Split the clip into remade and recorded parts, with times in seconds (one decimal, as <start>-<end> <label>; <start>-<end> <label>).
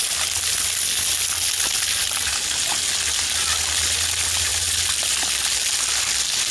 0.0-6.5 recorded